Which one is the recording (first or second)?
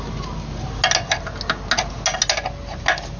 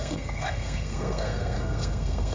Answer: first